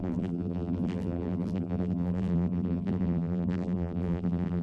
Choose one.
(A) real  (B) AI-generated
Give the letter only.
B